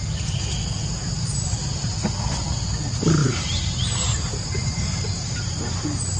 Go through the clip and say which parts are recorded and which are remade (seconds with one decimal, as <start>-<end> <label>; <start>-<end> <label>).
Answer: 0.0-3.2 recorded; 3.2-5.5 remade; 5.5-6.2 recorded